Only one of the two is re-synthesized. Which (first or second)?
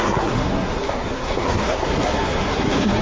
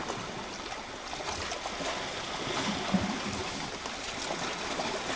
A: first